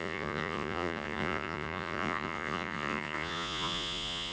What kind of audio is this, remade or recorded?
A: remade